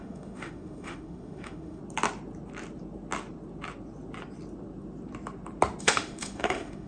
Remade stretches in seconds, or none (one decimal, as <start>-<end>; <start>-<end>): 0.0-1.8; 5.8-6.9